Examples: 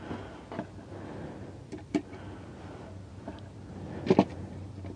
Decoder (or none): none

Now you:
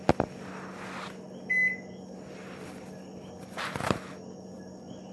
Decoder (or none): none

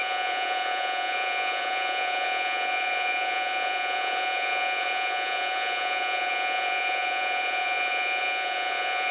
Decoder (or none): vocoder, Vocos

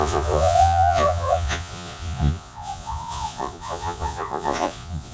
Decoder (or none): vocoder, Vocos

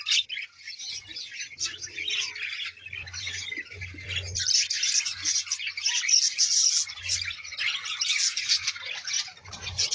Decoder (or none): none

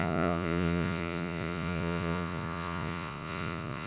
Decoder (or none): vocoder, Vocos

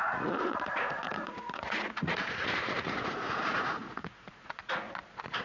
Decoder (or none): vocoder, Vocos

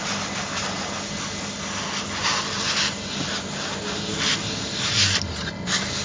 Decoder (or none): none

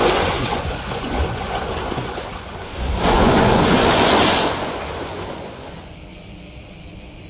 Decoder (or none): vocoder, Vocos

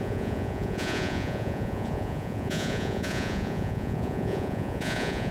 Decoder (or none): vocoder, Vocos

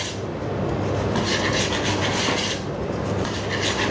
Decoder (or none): none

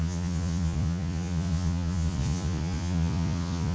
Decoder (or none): vocoder, Vocos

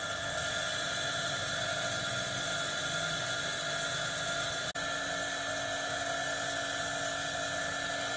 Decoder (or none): none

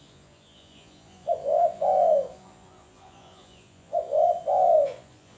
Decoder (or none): vocoder, Vocos